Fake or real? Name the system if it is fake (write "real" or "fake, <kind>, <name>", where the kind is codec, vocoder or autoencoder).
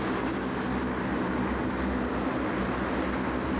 real